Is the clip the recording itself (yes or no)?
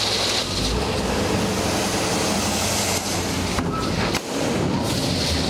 yes